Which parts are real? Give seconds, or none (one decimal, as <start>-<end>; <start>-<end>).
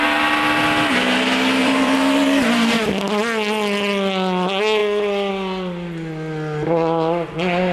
0.0-1.6; 2.8-7.7